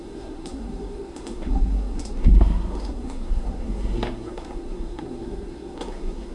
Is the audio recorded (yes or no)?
no